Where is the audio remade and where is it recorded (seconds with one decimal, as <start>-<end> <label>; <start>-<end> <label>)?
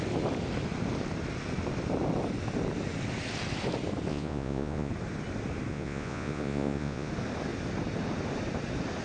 0.0-4.1 recorded; 4.1-4.9 remade; 4.9-5.7 recorded; 5.7-7.1 remade; 7.1-9.0 recorded